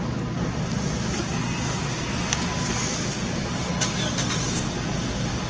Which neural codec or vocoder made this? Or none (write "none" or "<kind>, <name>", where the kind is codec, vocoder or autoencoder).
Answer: none